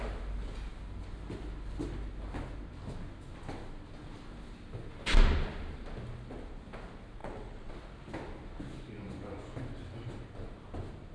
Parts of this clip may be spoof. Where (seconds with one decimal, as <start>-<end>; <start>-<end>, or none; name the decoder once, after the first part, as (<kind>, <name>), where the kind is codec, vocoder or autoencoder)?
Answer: 7.2-7.7 (vocoder, WaveNeXt)